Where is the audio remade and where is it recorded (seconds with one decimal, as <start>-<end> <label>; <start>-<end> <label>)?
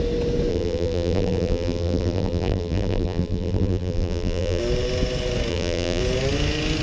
0.0-0.5 recorded; 0.5-4.6 remade; 4.6-5.5 recorded; 5.5-6.0 remade; 6.0-6.8 recorded